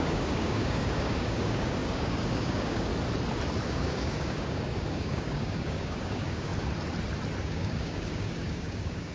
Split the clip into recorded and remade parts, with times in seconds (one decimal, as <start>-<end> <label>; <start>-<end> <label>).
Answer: 0.0-2.9 remade; 2.9-3.7 recorded; 3.7-6.5 remade; 6.5-7.4 recorded; 7.4-9.1 remade